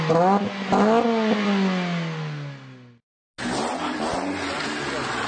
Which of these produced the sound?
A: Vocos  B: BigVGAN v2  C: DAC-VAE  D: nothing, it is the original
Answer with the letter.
D